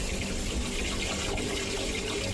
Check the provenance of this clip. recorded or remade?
recorded